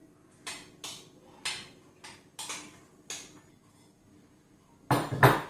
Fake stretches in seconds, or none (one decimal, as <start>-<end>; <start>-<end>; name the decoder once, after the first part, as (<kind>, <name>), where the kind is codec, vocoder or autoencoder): none